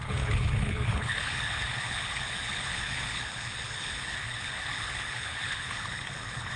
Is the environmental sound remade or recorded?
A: remade